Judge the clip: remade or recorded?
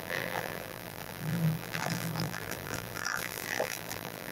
remade